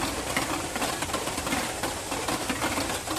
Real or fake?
fake